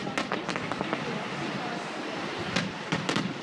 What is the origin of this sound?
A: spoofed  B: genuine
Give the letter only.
B